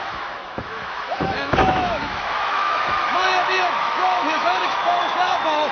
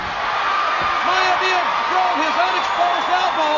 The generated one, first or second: first